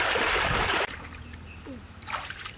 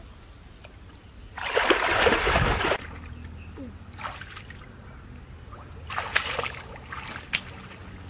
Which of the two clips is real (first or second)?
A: second